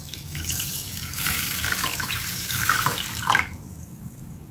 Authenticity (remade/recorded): remade